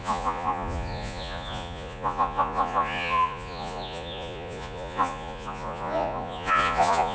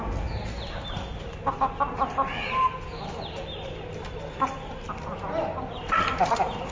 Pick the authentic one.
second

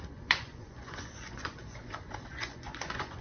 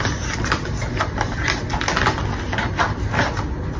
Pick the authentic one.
second